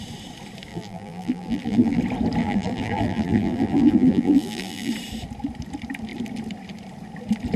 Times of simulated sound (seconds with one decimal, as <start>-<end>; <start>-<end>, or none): 0.7-2.0; 2.4-4.9